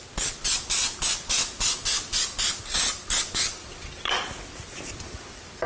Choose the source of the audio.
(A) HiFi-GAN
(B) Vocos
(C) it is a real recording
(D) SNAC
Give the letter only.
C